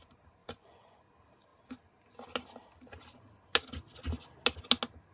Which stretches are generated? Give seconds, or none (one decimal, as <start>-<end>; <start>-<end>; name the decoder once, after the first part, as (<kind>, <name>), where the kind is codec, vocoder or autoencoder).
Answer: 0.4-1.0 (vocoder, Vocos)